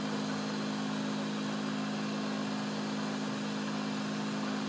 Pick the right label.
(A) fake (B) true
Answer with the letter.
B